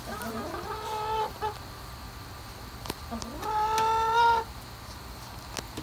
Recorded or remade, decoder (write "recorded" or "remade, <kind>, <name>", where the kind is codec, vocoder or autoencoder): recorded